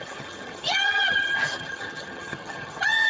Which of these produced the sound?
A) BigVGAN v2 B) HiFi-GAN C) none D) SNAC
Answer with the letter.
B